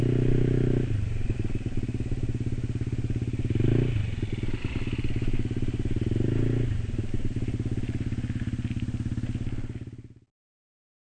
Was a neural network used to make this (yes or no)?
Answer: no